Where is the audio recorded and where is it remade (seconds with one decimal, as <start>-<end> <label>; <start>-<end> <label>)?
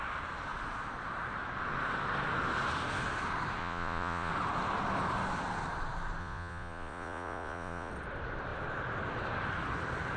0.0-3.6 recorded; 3.6-4.3 remade; 4.3-6.2 recorded; 6.2-7.9 remade; 7.9-10.2 recorded